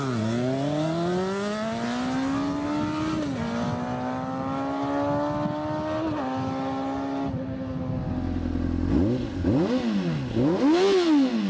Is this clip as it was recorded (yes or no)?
yes